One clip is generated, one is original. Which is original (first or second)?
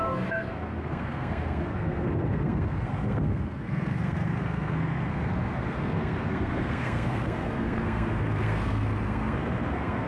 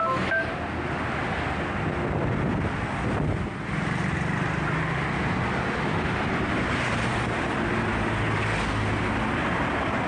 second